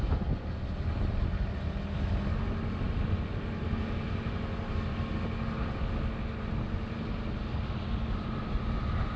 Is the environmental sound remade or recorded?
recorded